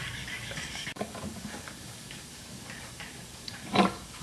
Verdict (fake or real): fake